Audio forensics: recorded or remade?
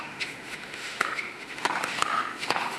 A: remade